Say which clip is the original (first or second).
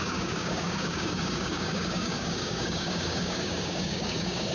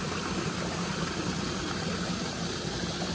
second